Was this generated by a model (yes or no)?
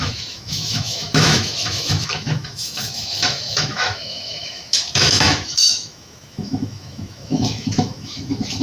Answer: yes